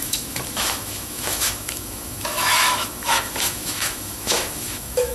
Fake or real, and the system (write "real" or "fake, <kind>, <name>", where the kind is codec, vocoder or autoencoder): fake, autoencoder, DAC-VAE